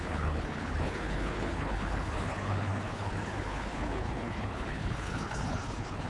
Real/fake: fake